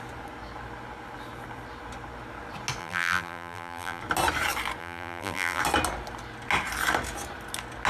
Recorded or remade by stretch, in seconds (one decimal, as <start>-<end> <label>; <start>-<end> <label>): 0.0-2.8 recorded; 2.8-4.0 remade; 4.0-4.8 recorded; 4.8-5.6 remade; 5.6-7.9 recorded

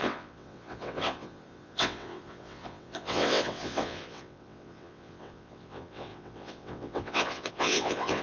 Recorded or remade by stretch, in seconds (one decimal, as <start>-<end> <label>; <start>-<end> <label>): 0.0-8.2 remade

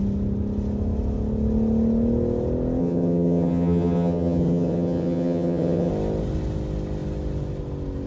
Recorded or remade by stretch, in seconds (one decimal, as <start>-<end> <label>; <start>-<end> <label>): 0.0-2.8 recorded; 2.8-5.9 remade; 5.9-8.1 recorded

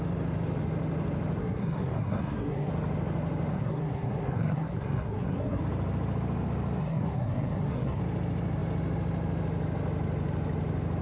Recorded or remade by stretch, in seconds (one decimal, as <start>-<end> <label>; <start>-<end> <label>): 0.0-1.4 recorded; 1.4-2.7 remade; 2.7-3.5 recorded; 3.5-5.6 remade; 5.6-6.8 recorded; 6.8-8.0 remade; 8.0-11.0 recorded

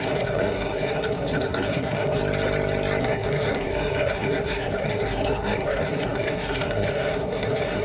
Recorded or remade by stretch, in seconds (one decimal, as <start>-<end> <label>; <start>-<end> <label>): 0.0-2.2 remade; 2.2-3.0 recorded; 3.0-7.8 remade